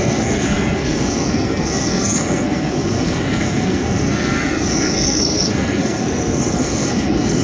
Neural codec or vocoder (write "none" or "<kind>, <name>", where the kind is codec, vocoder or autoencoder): codec, SNAC